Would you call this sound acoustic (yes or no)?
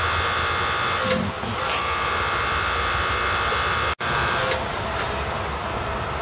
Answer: yes